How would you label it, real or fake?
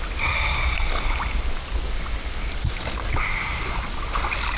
real